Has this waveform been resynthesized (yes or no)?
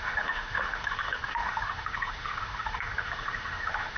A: yes